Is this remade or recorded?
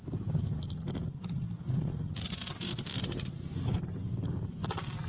recorded